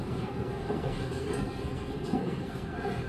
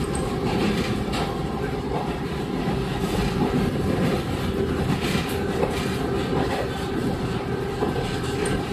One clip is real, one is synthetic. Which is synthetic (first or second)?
first